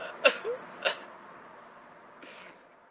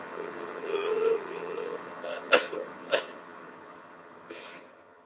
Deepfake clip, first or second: second